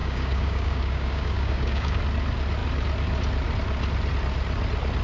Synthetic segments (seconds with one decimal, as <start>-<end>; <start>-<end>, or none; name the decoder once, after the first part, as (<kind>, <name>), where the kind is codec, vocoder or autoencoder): 0.0-2.0 (codec, DAC)